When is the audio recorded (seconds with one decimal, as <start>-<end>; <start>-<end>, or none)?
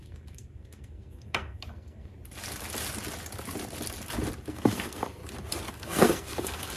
2.1-4.5; 5.2-5.7